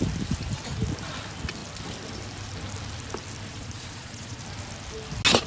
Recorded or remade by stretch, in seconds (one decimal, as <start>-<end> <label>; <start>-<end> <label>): 0.0-3.5 recorded; 3.5-4.4 remade; 4.4-5.5 recorded